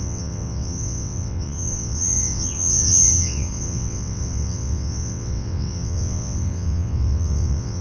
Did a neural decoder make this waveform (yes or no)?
yes